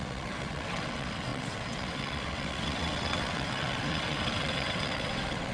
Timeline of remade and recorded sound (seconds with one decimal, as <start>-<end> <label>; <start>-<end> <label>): 0.0-5.5 remade